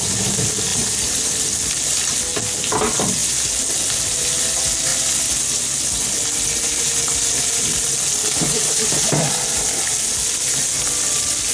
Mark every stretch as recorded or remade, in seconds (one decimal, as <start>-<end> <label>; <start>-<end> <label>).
0.0-11.5 recorded